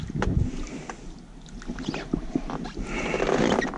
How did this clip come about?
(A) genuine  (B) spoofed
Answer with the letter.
A